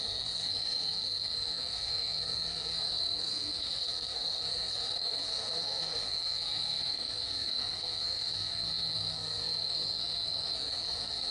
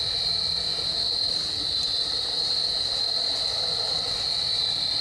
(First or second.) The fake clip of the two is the first